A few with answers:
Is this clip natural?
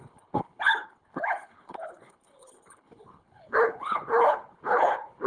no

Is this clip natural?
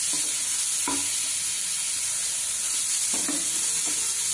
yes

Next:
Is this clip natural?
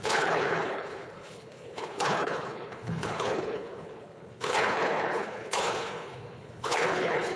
no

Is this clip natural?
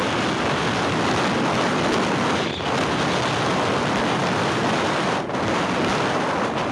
yes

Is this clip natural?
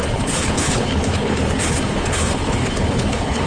no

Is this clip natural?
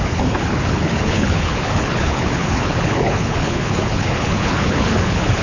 no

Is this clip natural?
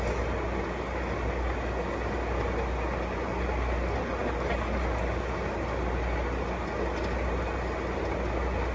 yes